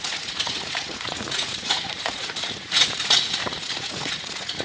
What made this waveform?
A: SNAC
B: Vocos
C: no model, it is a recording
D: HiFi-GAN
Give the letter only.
B